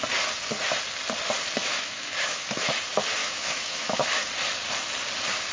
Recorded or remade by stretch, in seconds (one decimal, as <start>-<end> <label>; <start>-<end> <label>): 0.0-1.6 recorded; 1.6-2.7 remade; 2.7-3.2 recorded; 3.2-4.2 remade; 4.2-5.5 recorded